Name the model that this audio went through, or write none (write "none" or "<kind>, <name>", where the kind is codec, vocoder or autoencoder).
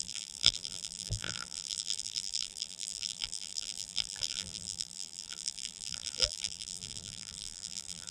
vocoder, BigVGAN v2